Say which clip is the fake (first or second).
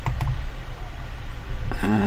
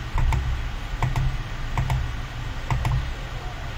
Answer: first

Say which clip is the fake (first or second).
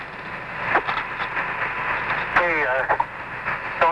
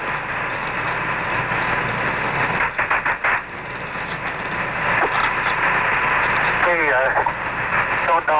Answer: second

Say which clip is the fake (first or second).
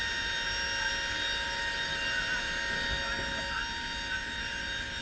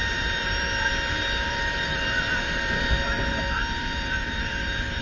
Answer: second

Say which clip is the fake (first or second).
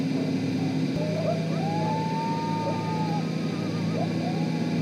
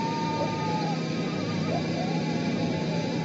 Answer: second